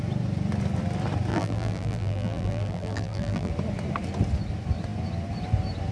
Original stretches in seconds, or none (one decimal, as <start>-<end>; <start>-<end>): 0.0-1.3; 3.5-5.9